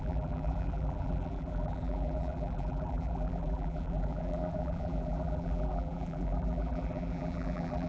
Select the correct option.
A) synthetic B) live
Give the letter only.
A